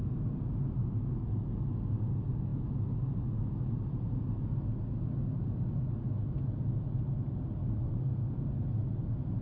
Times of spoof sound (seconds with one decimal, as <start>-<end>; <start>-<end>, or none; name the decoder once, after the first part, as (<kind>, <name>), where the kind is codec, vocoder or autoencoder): 7.6-8.3 (codec, SNAC)